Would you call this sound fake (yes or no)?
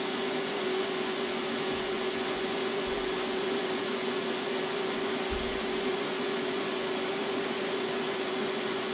yes